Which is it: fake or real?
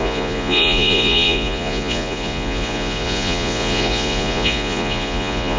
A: fake